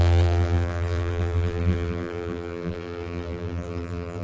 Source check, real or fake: fake